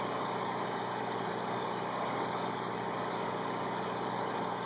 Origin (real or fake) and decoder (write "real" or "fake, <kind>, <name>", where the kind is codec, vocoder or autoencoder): fake, codec, DAC